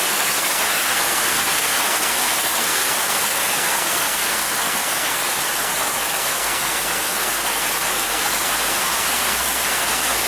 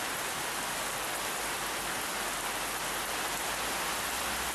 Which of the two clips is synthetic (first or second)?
first